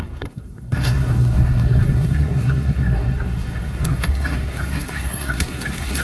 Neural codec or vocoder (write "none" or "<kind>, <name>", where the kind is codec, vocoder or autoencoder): codec, SNAC